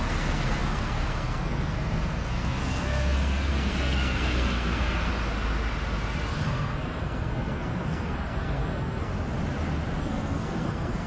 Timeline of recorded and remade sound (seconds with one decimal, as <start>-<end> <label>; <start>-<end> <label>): 0.0-5.1 remade; 5.1-6.3 recorded; 6.3-9.1 remade; 9.1-10.0 recorded; 10.0-11.1 remade